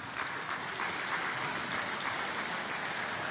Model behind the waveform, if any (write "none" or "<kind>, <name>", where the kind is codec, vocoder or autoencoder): none